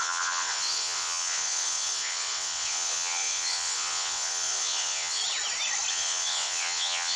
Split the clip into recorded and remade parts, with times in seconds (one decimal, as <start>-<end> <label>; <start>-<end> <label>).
0.0-5.2 remade; 5.2-5.9 recorded; 5.9-7.2 remade